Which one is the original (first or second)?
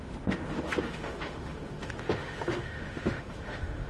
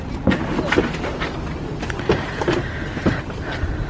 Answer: second